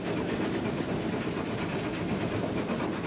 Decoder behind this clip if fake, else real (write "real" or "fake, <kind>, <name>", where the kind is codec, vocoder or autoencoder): real